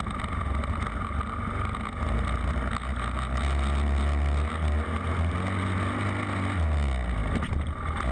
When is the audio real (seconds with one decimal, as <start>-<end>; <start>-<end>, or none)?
0.0-8.1